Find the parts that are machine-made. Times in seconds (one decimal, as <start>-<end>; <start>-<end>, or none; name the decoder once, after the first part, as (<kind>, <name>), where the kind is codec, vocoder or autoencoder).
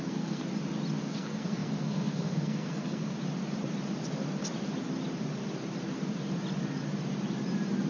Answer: 0.0-0.4 (codec, SNAC); 1.0-3.1